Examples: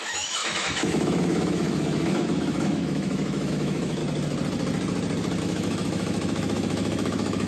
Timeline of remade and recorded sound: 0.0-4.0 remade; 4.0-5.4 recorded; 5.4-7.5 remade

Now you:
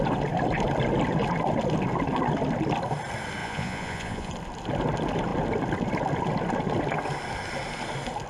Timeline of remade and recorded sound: 0.0-3.4 recorded; 3.4-4.3 remade; 4.3-8.3 recorded

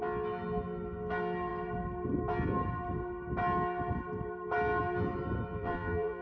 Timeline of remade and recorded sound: 0.0-5.5 recorded; 5.5-6.2 remade

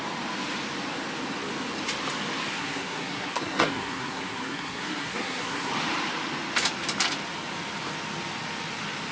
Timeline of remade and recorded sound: 0.0-2.5 recorded; 2.5-5.7 remade; 5.7-9.1 recorded

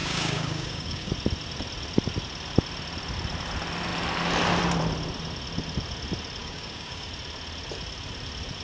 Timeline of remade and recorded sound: 0.0-1.1 remade; 1.1-6.4 recorded; 6.4-7.1 remade; 7.1-8.6 recorded

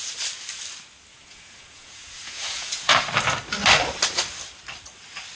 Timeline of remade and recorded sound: 0.0-1.1 recorded; 1.1-3.1 remade; 3.1-5.4 recorded

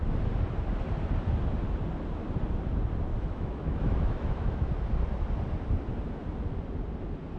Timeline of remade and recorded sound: 0.0-3.1 recorded; 3.1-4.7 remade; 4.7-7.4 recorded

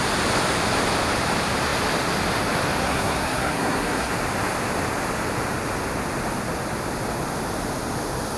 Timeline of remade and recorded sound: 0.0-2.8 recorded; 2.8-4.1 remade; 4.1-8.4 recorded